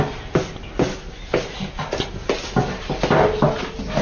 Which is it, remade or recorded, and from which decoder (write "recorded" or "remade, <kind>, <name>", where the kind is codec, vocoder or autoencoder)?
recorded